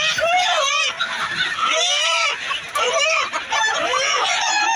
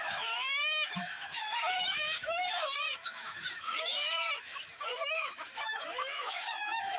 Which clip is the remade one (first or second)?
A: second